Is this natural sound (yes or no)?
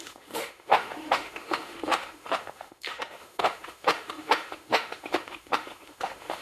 no